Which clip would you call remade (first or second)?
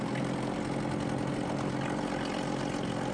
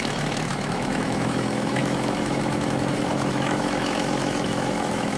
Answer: second